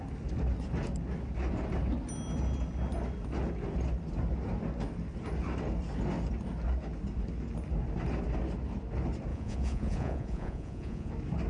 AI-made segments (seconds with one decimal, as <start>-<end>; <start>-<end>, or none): 9.3-11.1